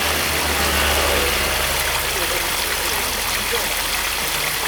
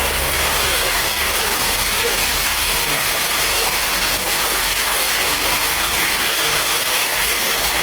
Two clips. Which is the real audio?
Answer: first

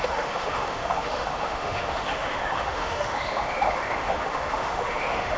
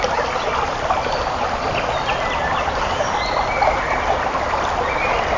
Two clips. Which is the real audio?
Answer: second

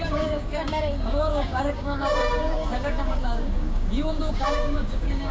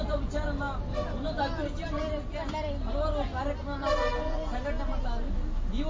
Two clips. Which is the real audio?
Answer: second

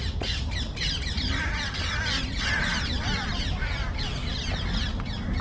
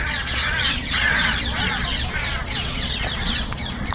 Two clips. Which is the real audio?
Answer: first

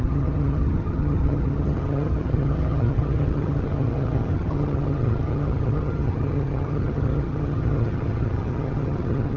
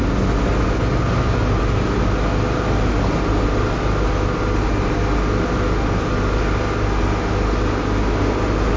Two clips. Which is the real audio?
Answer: second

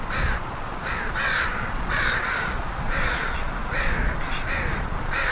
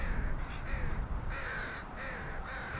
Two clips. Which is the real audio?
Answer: second